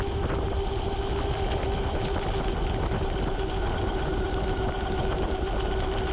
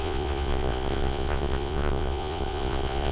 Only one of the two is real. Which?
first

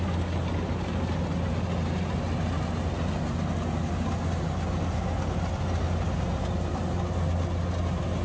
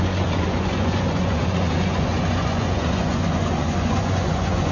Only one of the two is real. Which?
first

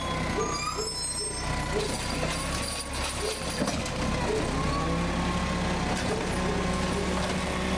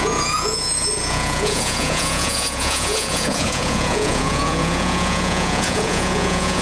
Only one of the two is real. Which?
first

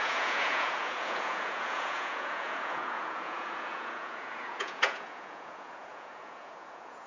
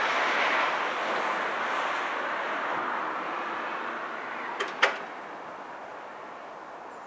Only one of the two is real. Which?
second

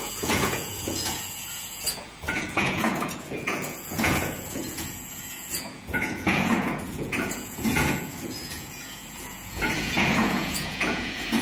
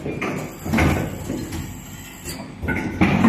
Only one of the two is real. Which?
second